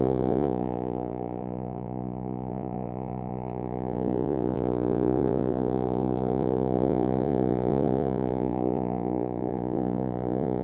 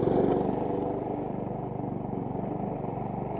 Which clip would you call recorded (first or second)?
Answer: second